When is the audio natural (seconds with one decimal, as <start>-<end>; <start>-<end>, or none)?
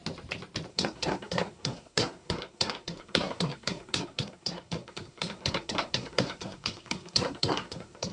0.0-0.7